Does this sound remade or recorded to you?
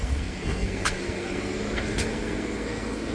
remade